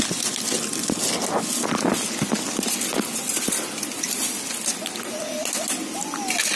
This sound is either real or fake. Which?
real